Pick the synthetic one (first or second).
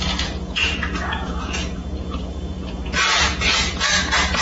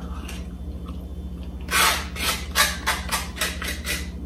first